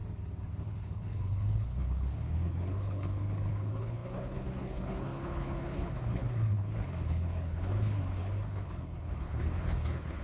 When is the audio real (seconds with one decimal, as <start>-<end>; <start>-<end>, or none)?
0.0-0.6